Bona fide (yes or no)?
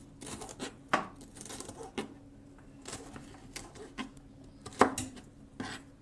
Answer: yes